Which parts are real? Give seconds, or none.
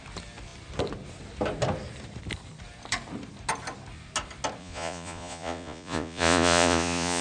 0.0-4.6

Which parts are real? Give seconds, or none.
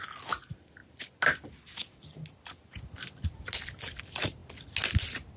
0.0-5.4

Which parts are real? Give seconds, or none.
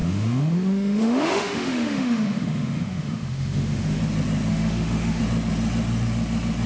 4.0-4.5; 5.2-6.7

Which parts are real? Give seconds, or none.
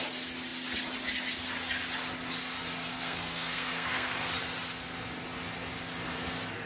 0.0-2.9; 4.3-6.7